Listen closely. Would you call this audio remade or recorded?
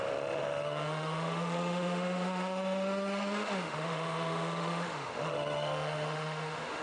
remade